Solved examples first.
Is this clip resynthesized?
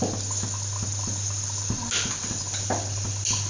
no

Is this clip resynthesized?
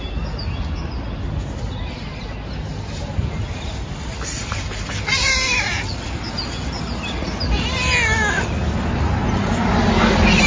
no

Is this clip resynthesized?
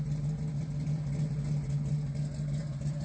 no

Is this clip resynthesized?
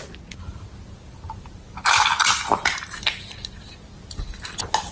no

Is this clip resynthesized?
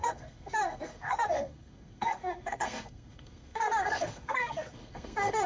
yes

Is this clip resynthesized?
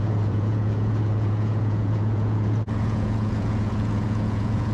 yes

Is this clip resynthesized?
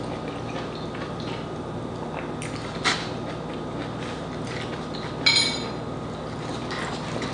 no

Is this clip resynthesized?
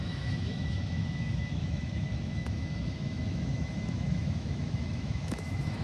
yes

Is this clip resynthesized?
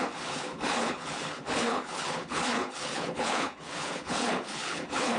yes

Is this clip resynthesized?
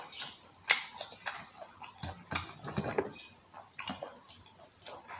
no